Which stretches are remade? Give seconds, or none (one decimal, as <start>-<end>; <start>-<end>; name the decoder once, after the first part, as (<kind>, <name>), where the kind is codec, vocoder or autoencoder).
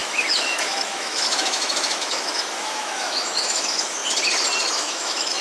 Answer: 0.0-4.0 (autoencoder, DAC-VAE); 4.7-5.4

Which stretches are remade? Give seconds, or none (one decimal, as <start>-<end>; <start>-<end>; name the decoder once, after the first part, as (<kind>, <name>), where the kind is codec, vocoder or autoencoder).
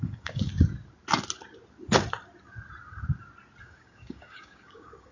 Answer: 0.0-0.5 (codec, DAC); 3.6-5.1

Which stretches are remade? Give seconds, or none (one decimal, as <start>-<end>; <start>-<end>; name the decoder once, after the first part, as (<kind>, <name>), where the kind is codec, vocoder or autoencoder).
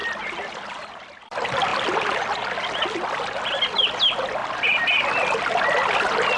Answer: 0.0-0.6 (vocoder, BigVGAN v2)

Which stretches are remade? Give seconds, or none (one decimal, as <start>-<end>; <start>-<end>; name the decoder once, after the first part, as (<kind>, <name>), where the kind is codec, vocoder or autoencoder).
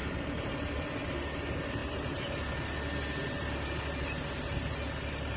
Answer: 0.0-1.1 (vocoder, BigVGAN v2)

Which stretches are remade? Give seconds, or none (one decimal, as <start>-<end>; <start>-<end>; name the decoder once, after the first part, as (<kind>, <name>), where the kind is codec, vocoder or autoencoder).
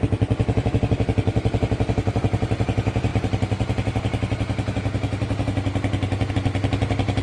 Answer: none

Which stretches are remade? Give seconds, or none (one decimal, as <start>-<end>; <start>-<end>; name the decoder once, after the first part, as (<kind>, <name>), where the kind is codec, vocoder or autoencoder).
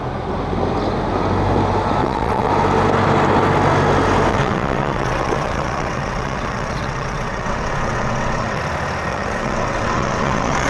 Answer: 2.0-2.5 (vocoder, WaveNeXt); 4.3-8.6; 9.1-10.7